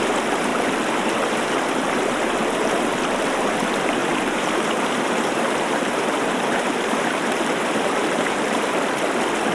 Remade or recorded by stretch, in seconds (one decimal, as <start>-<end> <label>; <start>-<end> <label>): 0.0-4.0 recorded; 4.0-8.7 remade; 8.7-9.5 recorded